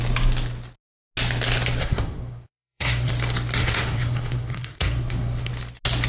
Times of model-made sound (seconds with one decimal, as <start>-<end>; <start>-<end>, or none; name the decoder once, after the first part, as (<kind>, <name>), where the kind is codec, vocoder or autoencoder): 1.8-3.1 (codec, SNAC); 3.6-5.5